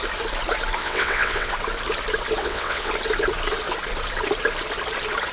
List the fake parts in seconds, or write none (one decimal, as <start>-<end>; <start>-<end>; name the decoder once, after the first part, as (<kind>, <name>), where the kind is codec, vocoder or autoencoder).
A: 0.8-1.5 (vocoder, WaveNeXt); 2.4-2.9